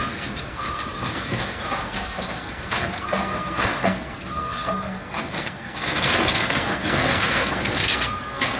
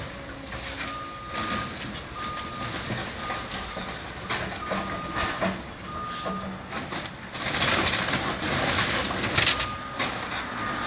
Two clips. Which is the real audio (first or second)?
second